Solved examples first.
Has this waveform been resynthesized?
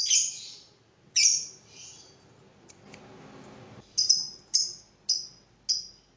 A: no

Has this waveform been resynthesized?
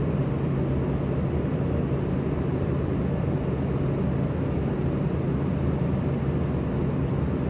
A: no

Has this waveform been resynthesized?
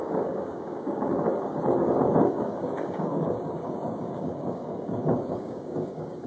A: yes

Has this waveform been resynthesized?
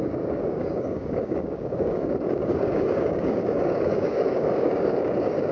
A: yes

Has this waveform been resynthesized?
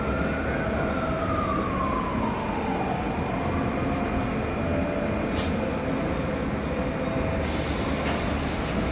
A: no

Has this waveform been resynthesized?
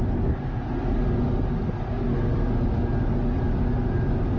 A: no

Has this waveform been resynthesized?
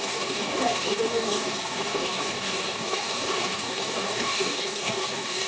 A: yes